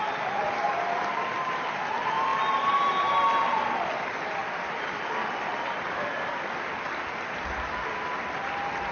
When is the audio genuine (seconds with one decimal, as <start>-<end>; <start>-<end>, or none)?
0.0-8.9